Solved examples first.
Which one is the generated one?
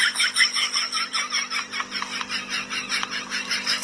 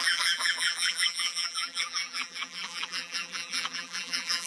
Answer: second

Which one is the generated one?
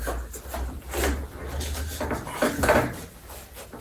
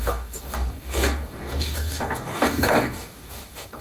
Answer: second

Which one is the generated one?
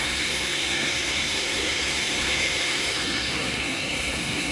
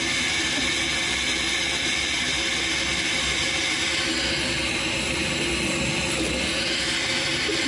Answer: first